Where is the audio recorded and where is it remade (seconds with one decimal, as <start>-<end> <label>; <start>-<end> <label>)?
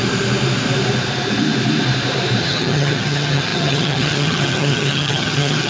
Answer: 0.0-2.4 recorded; 2.4-5.7 remade